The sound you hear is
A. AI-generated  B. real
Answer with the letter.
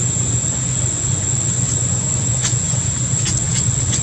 A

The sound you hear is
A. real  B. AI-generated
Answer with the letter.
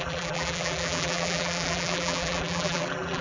B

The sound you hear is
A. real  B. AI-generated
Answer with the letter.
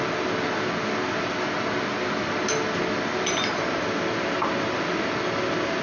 A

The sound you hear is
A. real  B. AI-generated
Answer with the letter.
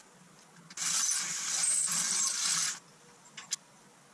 A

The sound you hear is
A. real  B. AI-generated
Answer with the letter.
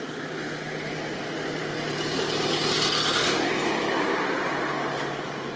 A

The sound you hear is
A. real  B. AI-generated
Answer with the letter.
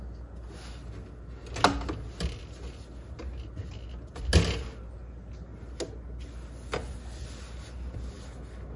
A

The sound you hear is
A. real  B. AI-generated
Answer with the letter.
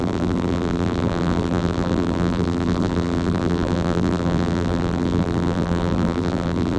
B